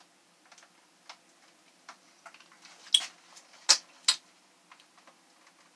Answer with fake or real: real